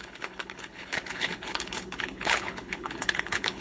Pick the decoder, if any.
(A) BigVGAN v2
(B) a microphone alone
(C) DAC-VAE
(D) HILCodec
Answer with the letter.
D